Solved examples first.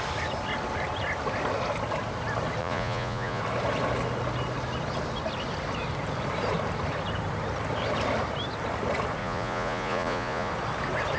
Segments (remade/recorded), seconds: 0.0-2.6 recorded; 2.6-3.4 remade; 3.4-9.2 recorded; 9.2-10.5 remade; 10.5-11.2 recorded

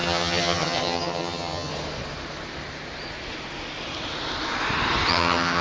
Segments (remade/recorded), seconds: 0.0-1.7 remade; 1.7-5.1 recorded; 5.1-5.6 remade

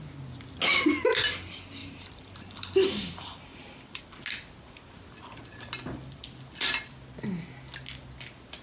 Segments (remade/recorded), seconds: 0.0-1.8 recorded; 1.8-4.0 remade; 4.0-8.6 recorded